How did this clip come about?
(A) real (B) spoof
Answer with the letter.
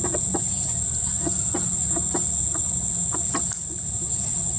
A